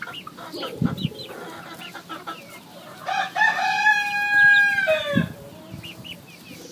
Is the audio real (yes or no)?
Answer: yes